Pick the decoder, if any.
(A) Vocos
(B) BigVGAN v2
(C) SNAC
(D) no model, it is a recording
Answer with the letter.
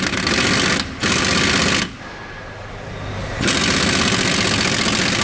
D